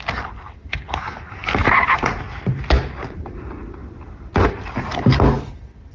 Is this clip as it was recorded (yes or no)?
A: yes